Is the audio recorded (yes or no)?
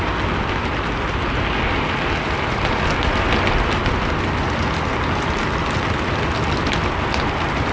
yes